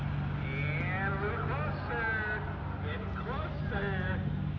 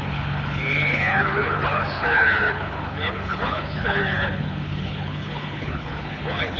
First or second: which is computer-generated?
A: second